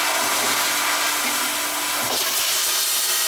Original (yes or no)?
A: yes